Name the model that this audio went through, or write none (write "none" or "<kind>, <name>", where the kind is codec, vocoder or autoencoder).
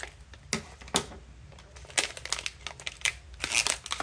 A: none